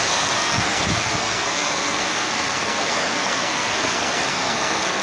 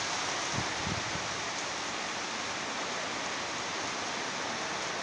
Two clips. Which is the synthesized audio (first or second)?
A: first